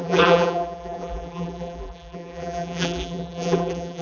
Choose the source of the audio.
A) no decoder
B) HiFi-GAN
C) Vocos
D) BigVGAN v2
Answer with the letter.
D